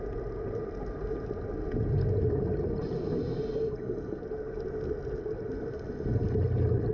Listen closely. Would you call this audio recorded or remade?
recorded